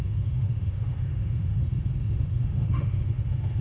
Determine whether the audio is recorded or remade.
remade